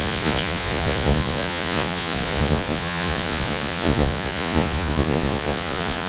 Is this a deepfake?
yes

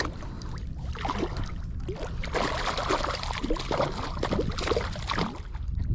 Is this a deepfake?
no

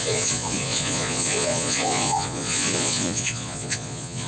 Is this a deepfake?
yes